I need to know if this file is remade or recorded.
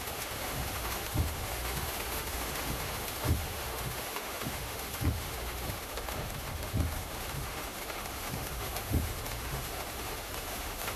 remade